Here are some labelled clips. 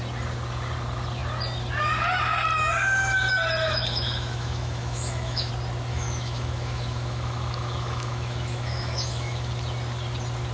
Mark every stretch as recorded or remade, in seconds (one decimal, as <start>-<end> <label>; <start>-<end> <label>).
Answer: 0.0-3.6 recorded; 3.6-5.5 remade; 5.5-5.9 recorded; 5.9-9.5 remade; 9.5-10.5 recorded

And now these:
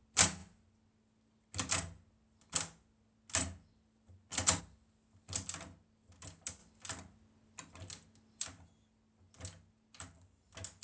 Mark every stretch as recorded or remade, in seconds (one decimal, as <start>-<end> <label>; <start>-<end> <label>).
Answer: 0.0-10.8 recorded

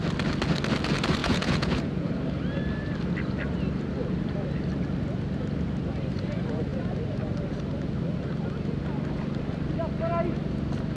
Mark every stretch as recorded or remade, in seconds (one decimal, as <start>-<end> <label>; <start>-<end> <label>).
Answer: 0.0-1.2 recorded; 1.2-2.1 remade; 2.1-11.0 recorded